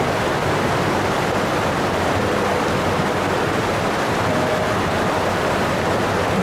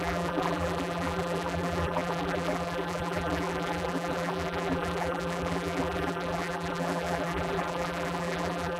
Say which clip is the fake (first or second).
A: second